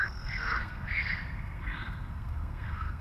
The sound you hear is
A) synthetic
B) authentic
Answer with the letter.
A